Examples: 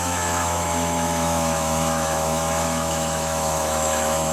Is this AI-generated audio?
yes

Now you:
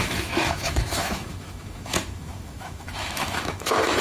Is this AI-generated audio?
yes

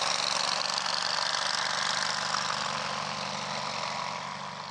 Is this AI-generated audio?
no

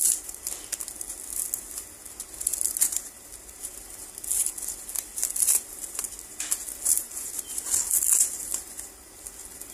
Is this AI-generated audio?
no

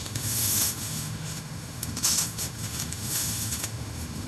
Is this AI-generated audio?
yes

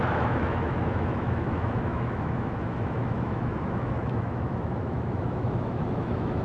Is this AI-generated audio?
yes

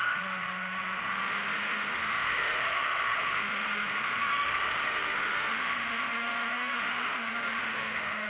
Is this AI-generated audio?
yes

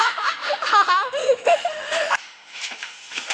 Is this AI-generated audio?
yes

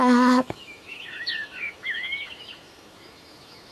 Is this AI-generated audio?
yes